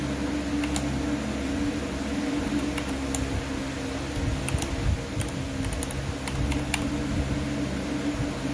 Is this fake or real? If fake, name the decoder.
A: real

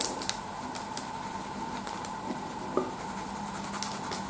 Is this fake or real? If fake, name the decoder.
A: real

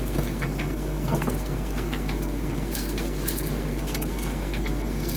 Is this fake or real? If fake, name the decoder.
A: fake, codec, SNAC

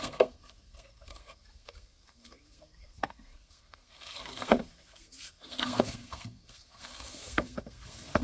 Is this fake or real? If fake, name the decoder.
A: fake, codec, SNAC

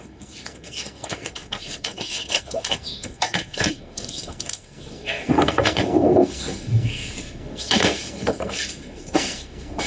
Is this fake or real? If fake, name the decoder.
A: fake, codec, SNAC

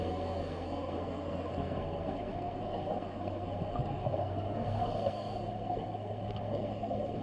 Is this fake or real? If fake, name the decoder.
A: fake, codec, SNAC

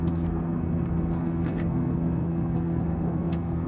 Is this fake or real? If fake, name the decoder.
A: fake, codec, SNAC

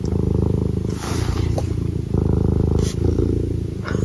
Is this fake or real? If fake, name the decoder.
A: real